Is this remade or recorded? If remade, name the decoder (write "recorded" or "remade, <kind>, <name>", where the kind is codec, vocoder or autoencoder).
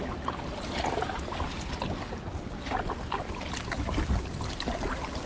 recorded